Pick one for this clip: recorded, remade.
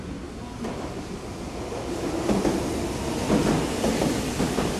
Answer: recorded